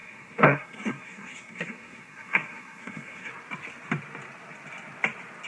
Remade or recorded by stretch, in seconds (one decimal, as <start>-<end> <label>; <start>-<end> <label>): 0.0-3.3 remade; 3.3-5.5 recorded